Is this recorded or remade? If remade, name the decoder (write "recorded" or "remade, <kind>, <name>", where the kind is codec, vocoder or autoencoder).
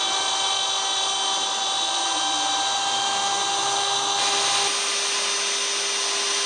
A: recorded